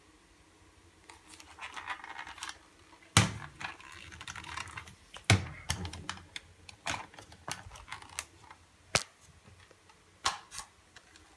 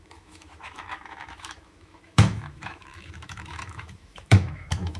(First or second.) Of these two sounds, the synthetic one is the second